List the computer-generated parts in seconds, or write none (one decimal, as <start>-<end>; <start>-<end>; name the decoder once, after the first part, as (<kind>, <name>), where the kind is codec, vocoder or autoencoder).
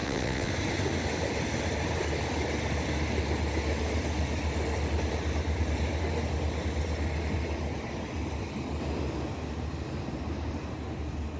0.0-0.5 (vocoder, WaveNeXt)